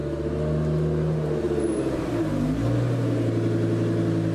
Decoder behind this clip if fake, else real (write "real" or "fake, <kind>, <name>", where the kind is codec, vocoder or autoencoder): real